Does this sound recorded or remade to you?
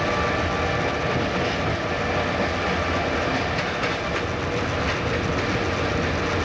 recorded